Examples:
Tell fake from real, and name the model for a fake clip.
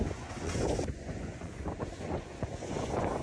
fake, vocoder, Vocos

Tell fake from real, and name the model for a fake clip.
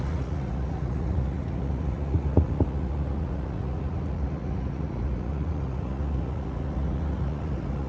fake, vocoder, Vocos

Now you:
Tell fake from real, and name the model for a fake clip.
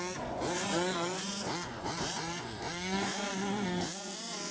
fake, vocoder, Vocos